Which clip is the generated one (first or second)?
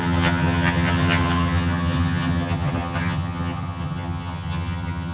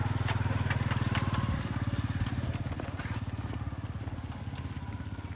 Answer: first